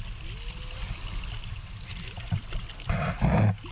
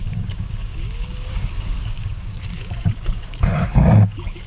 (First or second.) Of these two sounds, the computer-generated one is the second